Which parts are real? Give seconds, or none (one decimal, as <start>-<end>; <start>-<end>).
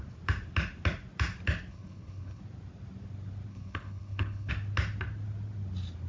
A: 0.0-1.7; 2.4-3.5; 4.5-6.1